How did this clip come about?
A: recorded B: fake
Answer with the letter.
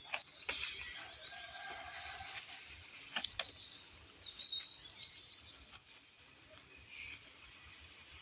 A